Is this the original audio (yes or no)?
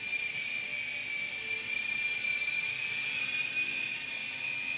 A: yes